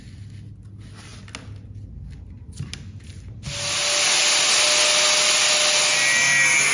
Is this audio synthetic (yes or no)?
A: no